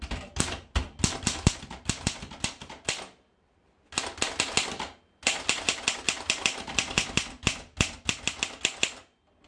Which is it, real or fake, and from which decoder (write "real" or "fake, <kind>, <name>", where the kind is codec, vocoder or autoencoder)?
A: real